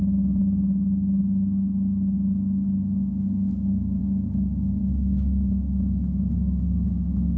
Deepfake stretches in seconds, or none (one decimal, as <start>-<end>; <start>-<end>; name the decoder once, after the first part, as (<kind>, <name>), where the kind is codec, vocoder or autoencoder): 0.0-0.4 (autoencoder, DAC-VAE); 1.2-4.0; 4.8-7.4